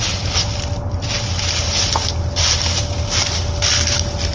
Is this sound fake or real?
real